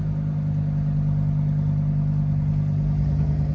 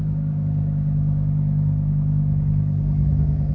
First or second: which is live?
first